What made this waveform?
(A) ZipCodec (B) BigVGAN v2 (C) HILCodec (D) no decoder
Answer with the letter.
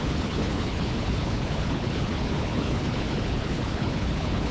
C